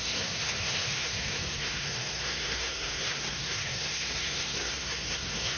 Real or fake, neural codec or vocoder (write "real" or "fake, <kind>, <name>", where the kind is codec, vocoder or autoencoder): fake, codec, SNAC